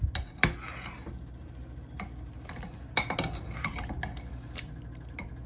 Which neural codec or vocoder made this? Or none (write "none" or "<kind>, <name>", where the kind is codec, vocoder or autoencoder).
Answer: none